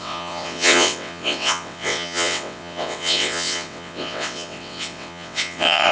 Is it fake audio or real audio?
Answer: fake